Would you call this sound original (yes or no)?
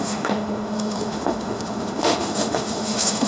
no